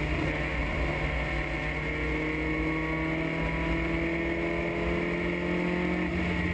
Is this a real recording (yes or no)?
yes